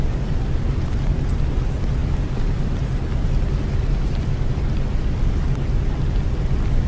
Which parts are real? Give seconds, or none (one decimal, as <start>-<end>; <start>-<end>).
0.0-6.9